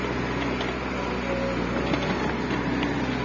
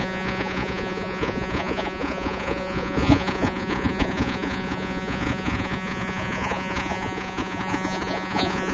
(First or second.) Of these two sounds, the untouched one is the first